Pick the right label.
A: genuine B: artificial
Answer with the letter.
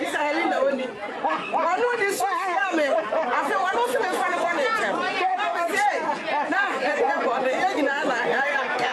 B